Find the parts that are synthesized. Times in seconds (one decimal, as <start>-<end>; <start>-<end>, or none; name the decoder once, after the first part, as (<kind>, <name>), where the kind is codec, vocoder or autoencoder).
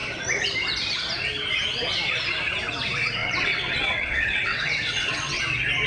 3.2-5.4 (vocoder, WaveNeXt)